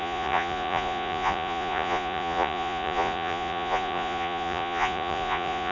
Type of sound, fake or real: fake